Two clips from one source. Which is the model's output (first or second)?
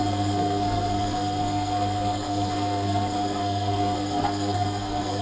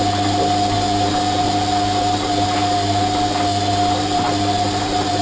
first